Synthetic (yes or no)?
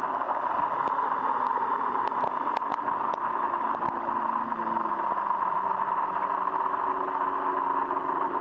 no